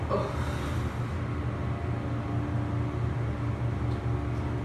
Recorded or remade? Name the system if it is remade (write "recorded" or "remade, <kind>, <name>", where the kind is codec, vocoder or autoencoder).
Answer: recorded